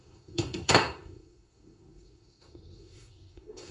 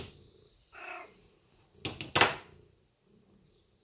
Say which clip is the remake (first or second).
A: first